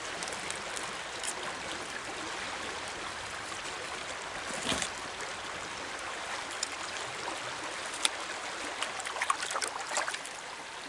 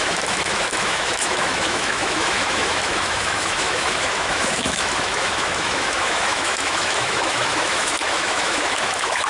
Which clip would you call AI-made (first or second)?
second